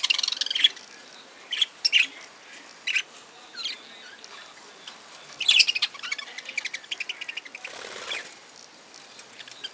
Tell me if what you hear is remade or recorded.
recorded